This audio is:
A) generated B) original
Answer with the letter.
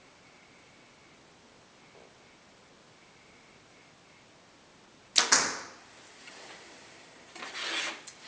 B